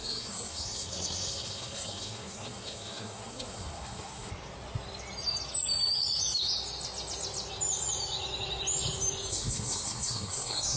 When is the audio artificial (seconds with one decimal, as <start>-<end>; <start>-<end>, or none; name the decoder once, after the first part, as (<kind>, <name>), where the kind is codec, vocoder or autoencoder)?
0.0-4.3 (codec, SNAC); 9.3-10.8